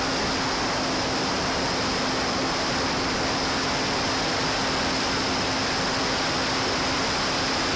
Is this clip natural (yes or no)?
yes